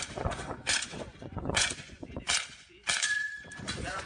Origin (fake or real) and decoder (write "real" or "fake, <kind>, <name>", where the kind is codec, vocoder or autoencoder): fake, vocoder, Vocos